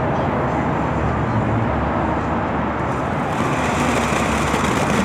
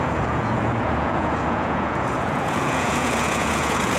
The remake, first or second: second